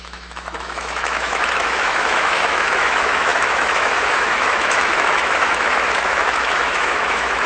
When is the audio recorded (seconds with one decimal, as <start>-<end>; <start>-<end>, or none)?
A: none